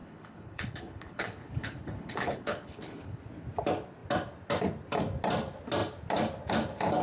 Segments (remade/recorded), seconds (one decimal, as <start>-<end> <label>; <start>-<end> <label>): 0.0-3.2 remade; 3.2-7.0 recorded